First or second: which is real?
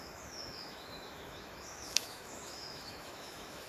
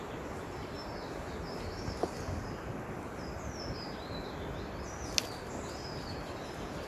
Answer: second